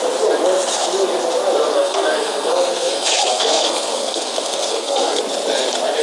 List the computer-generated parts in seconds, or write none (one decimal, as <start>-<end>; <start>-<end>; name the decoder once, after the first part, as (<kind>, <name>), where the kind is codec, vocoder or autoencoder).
1.7-5.2 (codec, SNAC)